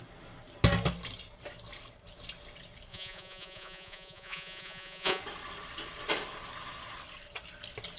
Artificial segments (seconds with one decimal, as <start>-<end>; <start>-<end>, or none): 2.9-5.2